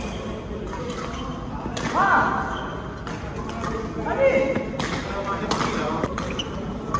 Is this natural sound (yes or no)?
yes